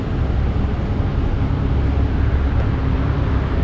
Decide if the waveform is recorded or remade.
recorded